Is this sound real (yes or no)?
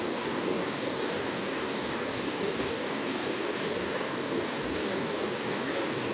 no